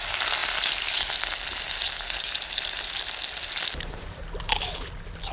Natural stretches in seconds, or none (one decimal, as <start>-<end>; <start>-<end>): 0.0-5.3